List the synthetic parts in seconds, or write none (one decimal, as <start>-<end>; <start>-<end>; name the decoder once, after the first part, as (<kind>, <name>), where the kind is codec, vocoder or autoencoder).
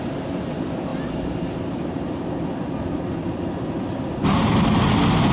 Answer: none